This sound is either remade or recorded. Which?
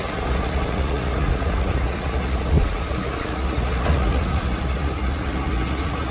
remade